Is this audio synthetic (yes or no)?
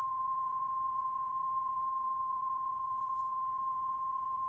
yes